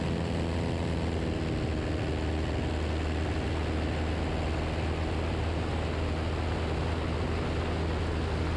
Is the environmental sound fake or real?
real